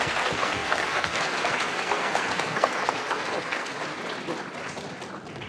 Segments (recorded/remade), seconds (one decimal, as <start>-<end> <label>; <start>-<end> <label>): 0.0-3.7 remade; 3.7-5.5 recorded